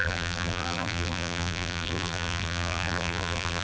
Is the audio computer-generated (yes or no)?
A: yes